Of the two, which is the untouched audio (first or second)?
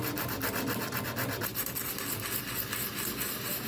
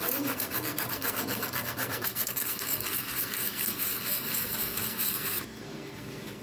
first